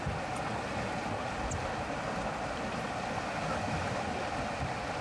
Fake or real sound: real